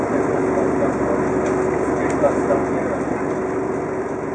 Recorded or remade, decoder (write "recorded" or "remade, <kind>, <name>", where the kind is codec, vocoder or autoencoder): recorded